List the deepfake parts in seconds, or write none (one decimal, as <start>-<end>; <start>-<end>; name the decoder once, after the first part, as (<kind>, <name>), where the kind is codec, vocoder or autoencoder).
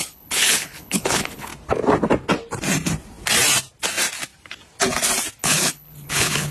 0.0-1.5 (codec, HILCodec); 5.4-6.5